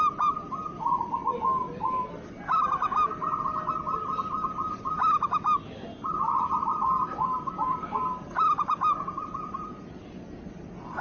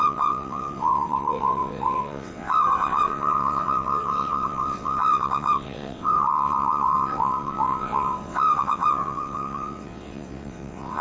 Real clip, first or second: first